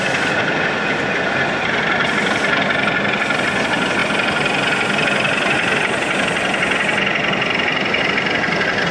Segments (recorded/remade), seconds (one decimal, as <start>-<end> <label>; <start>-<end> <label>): 0.0-8.9 recorded